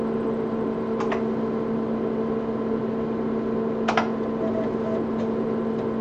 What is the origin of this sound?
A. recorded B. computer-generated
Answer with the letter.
A